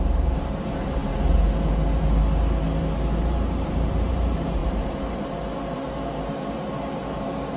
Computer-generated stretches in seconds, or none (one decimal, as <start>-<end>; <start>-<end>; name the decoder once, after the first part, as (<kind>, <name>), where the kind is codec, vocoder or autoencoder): 0.0-1.0 (vocoder, BigVGAN v2); 3.2-7.6